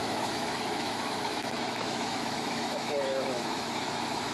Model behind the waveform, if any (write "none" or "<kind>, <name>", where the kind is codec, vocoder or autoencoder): autoencoder, DAC-VAE